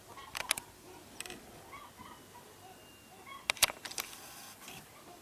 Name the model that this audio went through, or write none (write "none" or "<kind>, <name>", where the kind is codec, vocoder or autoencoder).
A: none